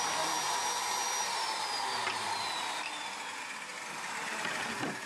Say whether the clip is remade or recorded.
recorded